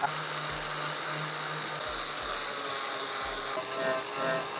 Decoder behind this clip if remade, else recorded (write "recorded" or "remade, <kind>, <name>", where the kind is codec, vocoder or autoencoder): recorded